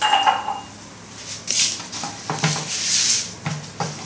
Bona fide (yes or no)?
yes